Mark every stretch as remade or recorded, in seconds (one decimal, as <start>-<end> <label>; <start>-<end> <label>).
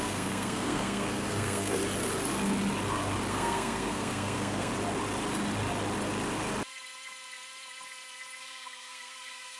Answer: 0.0-1.8 remade; 1.8-3.3 recorded; 3.3-4.7 remade; 4.7-8.4 recorded; 8.4-9.6 remade